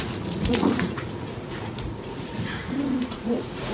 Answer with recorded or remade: remade